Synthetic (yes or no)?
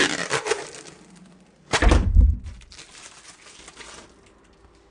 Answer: no